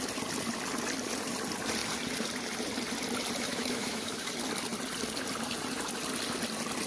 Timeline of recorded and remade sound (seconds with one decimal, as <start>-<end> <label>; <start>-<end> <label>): 0.0-3.5 recorded; 3.5-4.3 remade; 4.3-6.9 recorded